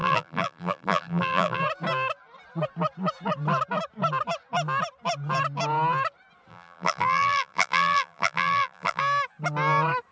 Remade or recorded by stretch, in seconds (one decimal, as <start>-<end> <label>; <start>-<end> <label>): 0.0-1.6 remade; 1.6-6.5 recorded; 6.5-9.0 remade; 9.0-10.1 recorded